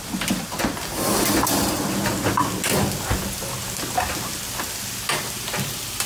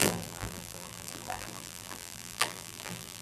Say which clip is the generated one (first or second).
second